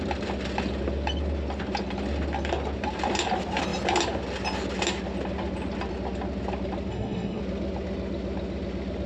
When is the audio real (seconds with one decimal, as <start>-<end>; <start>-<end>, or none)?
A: 0.0-6.9; 7.4-9.1